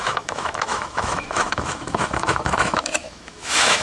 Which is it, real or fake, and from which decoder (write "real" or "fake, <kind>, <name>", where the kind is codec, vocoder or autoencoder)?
fake, autoencoder, DAC-VAE